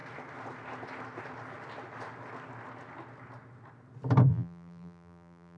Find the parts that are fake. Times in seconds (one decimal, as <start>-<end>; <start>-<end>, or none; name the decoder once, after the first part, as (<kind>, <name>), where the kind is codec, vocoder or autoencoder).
4.3-5.6 (vocoder, BigVGAN v2)